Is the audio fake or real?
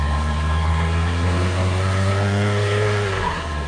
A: fake